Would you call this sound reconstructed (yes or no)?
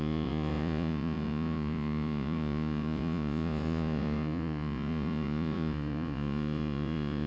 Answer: yes